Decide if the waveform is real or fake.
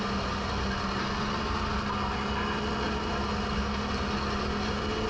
real